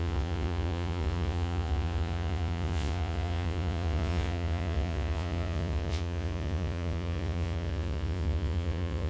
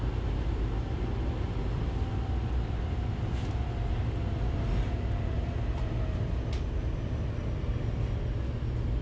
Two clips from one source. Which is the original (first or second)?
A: second